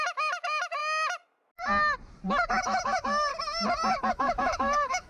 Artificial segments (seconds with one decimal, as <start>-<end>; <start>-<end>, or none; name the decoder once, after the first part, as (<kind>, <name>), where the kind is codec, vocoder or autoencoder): 0.0-0.8 (autoencoder, DAC-VAE); 2.6-3.3; 4.1-5.1